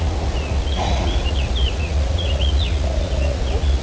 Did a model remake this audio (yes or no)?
yes